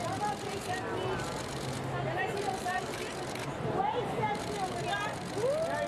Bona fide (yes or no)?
yes